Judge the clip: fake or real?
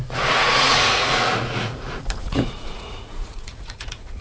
fake